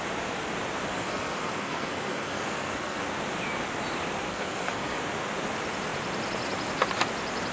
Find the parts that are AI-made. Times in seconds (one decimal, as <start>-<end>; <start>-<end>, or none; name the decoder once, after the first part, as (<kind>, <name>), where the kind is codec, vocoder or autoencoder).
0.9-3.0 (codec, SNAC); 4.3-5.0